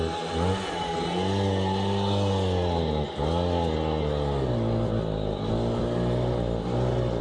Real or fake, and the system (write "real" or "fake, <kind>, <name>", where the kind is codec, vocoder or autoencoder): real